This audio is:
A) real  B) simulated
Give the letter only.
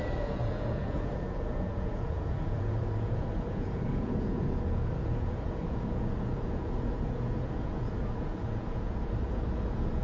B